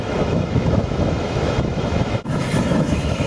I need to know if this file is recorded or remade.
remade